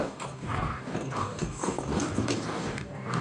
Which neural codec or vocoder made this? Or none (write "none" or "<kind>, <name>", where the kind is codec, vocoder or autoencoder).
codec, DAC